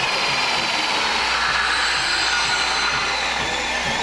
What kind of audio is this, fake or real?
real